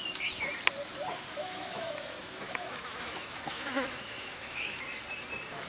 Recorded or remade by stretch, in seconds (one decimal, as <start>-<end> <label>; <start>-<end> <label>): 0.0-1.4 recorded; 1.4-4.8 remade; 4.8-5.7 recorded